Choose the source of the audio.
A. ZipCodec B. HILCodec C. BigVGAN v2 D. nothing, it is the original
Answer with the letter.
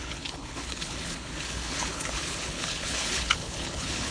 B